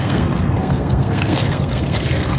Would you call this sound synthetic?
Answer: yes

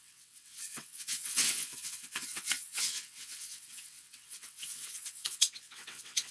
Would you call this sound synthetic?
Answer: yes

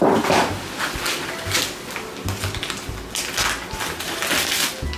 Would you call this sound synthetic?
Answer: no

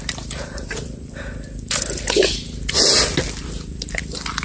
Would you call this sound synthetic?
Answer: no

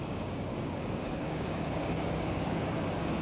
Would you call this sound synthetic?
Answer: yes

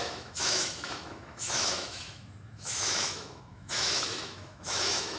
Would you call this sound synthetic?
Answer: yes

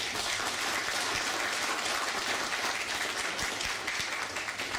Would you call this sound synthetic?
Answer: no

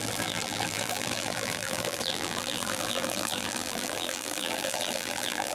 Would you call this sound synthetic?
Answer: yes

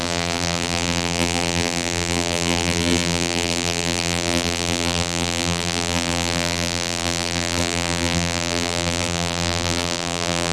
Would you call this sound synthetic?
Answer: yes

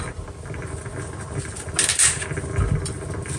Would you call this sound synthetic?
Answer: no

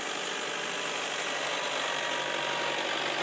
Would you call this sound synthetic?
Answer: no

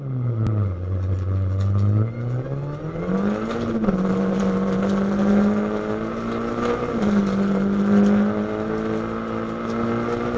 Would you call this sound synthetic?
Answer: no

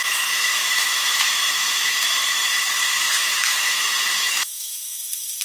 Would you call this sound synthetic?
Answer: yes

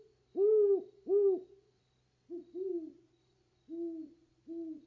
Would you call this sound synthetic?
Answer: no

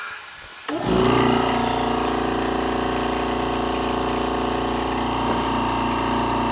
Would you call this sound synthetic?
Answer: no